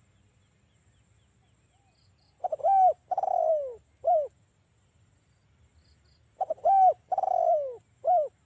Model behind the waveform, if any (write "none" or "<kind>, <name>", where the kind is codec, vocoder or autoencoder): none